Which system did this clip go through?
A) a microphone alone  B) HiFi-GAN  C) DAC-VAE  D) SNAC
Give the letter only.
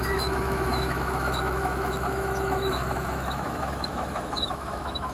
C